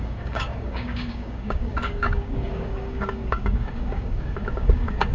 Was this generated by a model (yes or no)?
yes